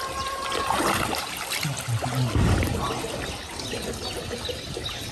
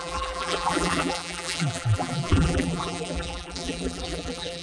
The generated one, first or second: second